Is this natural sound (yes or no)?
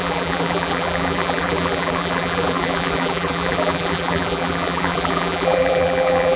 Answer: no